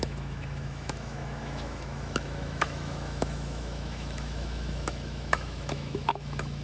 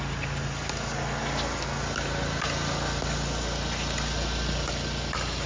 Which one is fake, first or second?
first